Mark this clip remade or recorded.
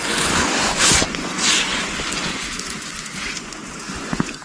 remade